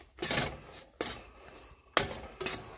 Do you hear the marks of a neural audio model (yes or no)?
no